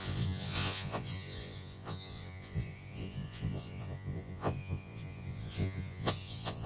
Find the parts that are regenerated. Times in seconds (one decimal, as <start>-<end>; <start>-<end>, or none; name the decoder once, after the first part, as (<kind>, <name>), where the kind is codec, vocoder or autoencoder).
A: 0.0-6.7 (vocoder, Vocos)